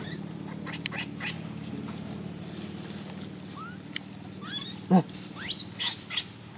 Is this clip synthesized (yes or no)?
no